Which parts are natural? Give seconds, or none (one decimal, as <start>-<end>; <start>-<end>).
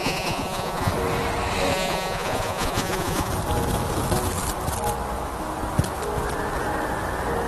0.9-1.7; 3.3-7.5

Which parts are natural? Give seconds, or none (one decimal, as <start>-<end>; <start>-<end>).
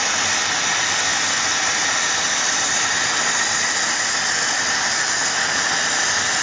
0.0-6.4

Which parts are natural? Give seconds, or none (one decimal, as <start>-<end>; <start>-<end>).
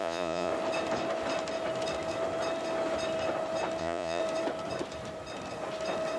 0.5-3.8; 4.2-6.2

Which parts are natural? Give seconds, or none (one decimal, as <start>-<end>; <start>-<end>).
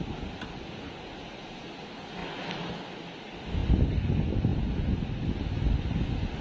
0.0-6.4